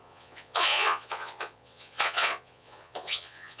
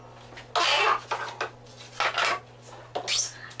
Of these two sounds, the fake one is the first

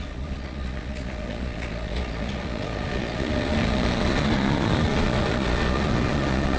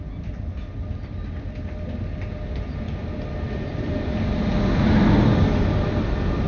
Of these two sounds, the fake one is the first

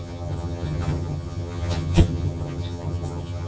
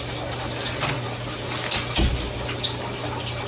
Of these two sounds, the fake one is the first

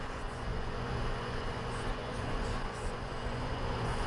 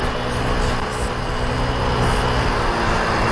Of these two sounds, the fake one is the first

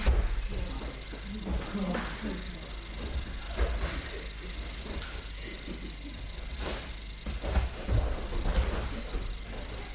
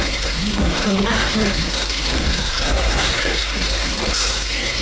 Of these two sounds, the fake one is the second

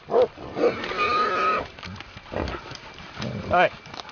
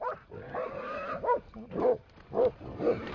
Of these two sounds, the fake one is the second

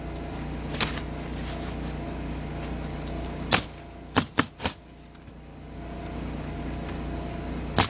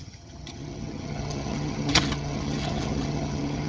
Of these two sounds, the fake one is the second